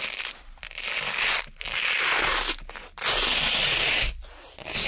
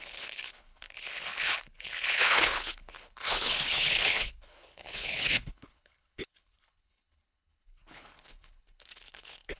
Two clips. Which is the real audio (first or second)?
first